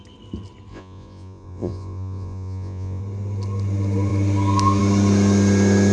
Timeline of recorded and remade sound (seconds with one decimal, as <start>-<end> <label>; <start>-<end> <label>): 0.0-0.7 recorded; 0.7-3.0 remade; 3.0-5.9 recorded